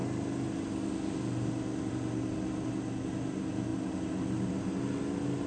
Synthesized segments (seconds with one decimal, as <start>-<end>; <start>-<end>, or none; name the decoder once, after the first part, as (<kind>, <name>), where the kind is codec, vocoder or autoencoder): none